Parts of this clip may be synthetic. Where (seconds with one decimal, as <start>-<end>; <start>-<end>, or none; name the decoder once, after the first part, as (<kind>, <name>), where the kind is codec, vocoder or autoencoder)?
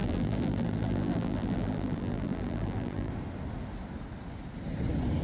0.0-3.1 (vocoder, BigVGAN v2)